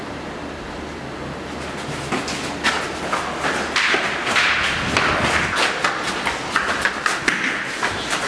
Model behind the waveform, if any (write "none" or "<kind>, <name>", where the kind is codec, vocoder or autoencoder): none